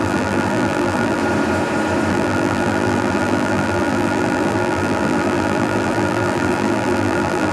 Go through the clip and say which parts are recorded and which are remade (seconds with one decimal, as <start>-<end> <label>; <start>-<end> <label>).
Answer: 0.0-1.2 remade; 1.2-2.1 recorded; 2.1-7.5 remade